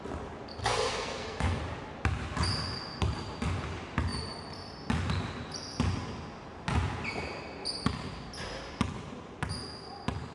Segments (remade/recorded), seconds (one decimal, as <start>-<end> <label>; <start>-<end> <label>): 0.0-0.6 recorded; 0.6-1.6 remade; 1.6-10.3 recorded